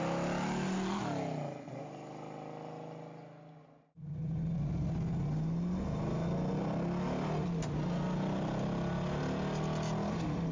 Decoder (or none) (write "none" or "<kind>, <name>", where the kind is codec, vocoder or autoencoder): none